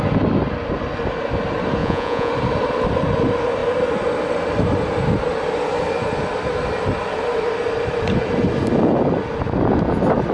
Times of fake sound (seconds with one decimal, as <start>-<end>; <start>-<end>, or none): 1.8-2.3